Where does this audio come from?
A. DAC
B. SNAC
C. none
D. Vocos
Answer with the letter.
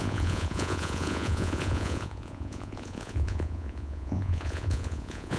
D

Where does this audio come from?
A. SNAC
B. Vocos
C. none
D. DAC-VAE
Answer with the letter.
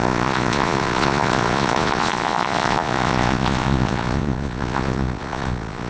B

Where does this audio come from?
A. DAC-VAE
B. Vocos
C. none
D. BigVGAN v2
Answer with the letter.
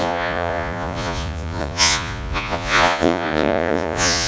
B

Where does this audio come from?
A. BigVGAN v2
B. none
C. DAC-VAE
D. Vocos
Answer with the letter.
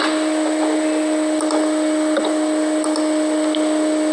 B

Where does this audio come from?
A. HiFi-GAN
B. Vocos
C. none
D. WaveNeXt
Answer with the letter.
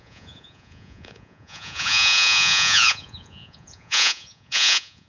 B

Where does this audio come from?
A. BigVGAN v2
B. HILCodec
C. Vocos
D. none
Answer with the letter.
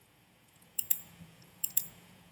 C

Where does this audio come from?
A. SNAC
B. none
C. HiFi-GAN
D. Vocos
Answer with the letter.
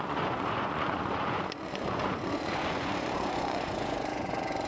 D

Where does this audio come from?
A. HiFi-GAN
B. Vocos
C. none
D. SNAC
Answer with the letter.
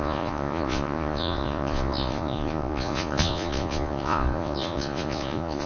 B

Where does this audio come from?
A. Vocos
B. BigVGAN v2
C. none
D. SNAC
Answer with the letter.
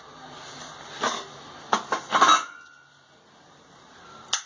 C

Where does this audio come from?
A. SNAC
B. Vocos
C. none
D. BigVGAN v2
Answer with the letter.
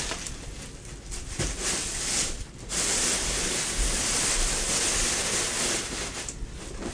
C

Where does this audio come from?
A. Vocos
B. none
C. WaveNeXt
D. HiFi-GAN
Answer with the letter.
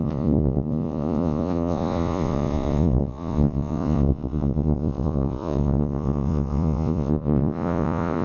A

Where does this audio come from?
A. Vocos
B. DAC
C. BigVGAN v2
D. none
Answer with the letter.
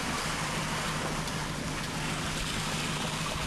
D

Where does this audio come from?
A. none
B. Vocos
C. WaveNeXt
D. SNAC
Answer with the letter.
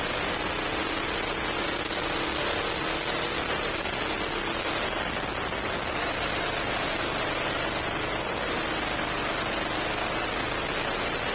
A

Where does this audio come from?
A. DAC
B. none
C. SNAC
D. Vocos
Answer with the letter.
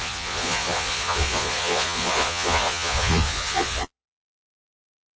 D